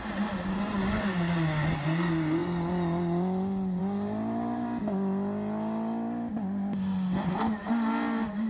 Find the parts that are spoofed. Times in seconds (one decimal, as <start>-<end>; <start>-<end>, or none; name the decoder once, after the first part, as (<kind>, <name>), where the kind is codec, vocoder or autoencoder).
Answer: none